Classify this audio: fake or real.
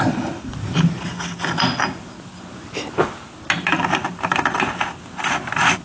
real